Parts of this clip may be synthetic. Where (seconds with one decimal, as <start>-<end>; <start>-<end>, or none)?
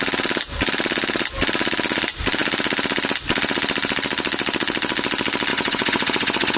5.5-6.6